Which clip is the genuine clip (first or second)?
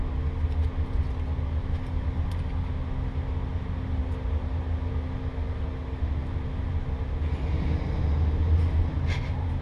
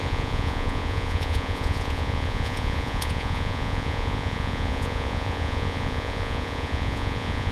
first